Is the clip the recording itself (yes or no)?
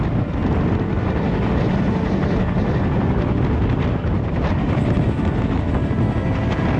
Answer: yes